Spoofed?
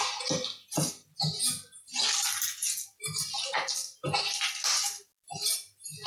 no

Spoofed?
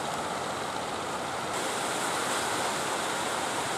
no